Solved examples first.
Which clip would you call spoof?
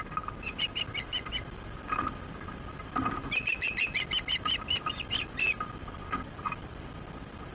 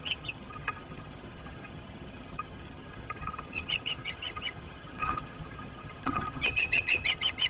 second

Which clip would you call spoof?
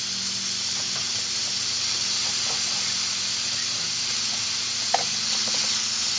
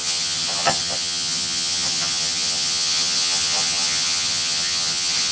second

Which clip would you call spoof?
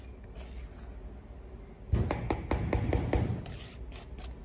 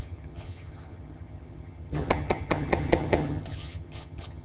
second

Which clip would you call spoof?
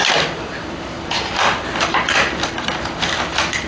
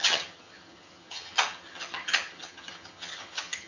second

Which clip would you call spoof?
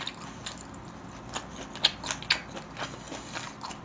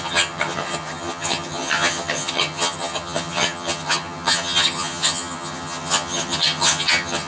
second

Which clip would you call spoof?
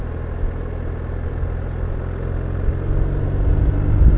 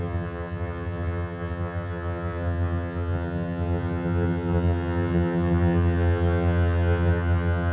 second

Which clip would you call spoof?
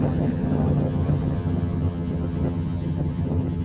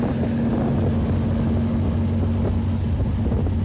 first